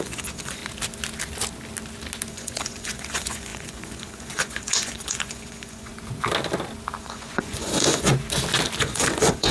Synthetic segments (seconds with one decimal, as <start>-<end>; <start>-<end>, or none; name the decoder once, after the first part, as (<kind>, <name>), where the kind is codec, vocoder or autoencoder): 0.0-0.6 (vocoder, Vocos); 2.3-5.9; 7.0-8.1; 8.8-9.5